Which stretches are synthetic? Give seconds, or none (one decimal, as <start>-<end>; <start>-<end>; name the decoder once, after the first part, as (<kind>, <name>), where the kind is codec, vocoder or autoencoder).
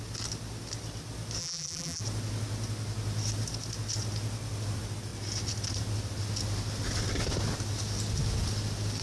1.4-2.0 (vocoder, BigVGAN v2)